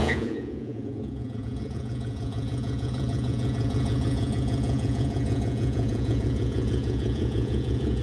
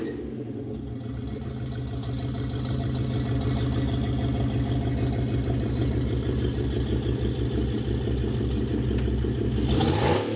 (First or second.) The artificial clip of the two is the first